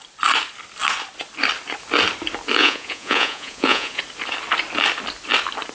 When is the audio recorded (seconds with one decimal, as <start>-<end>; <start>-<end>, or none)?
0.0-2.6; 4.0-5.7